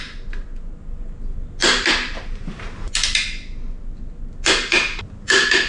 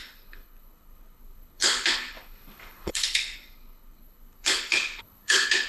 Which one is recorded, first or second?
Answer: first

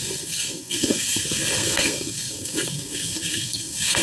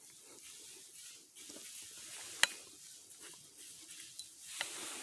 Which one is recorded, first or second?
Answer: second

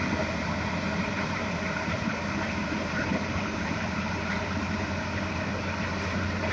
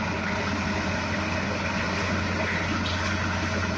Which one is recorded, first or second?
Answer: second